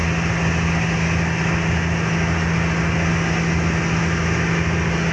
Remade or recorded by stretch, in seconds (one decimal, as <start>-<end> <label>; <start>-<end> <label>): 0.0-5.1 recorded